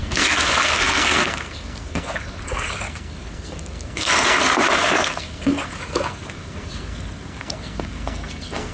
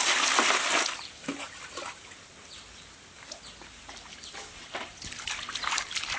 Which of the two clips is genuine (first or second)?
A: second